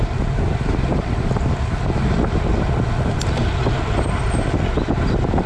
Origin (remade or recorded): recorded